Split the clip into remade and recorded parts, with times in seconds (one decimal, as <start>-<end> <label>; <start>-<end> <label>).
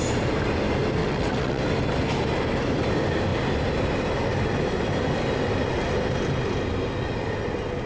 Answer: 0.0-1.0 recorded; 1.0-1.6 remade; 1.6-7.9 recorded